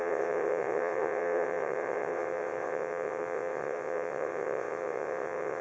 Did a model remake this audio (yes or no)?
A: yes